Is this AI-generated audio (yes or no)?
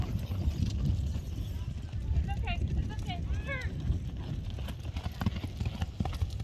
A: no